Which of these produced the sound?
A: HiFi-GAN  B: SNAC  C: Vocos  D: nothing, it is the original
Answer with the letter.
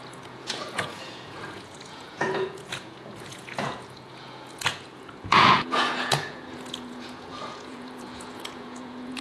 C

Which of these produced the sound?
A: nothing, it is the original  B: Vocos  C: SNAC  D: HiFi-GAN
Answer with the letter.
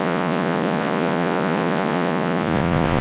B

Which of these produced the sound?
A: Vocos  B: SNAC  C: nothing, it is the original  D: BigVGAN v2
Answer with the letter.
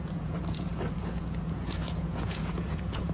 A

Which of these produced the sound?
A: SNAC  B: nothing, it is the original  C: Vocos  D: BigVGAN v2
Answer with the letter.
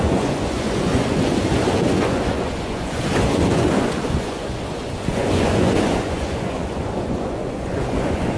C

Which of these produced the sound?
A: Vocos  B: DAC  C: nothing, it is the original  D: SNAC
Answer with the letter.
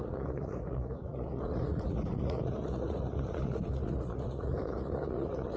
A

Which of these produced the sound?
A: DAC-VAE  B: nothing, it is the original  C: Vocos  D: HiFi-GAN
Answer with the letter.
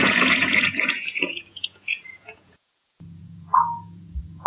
C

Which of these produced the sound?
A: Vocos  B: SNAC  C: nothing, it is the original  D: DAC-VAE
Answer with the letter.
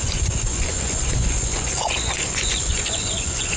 A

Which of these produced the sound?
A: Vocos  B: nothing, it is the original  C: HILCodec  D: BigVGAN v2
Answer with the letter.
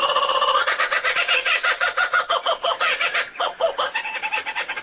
A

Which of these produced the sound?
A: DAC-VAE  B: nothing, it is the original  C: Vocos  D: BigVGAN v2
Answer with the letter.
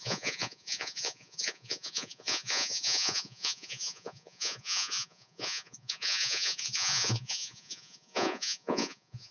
C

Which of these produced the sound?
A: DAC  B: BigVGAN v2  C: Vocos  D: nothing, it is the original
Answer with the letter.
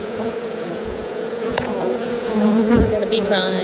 C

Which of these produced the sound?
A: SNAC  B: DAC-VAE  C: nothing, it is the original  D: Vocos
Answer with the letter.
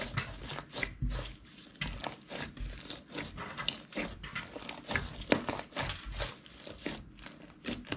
C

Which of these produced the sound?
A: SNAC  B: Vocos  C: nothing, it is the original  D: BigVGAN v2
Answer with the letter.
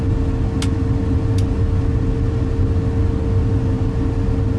C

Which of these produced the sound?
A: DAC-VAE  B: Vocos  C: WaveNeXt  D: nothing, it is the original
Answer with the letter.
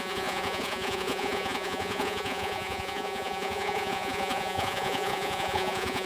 B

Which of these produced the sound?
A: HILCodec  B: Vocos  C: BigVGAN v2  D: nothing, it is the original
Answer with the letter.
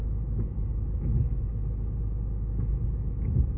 D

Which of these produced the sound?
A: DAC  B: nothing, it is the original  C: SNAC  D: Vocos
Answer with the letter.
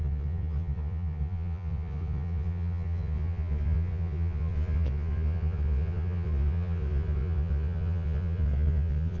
D